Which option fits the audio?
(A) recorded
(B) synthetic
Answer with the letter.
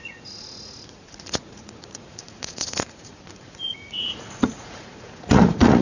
B